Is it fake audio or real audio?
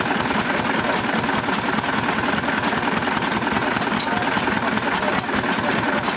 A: real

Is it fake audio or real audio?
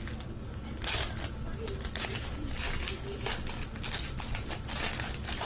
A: real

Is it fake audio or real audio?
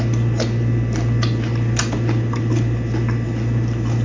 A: real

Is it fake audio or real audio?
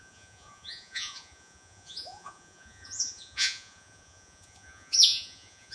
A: fake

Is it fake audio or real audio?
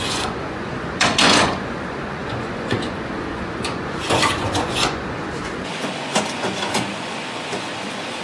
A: fake